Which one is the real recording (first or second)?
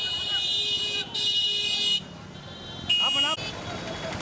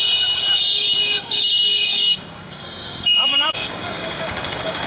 first